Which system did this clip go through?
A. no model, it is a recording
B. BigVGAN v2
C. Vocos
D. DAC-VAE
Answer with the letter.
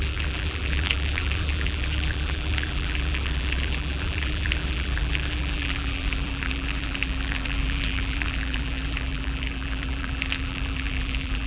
B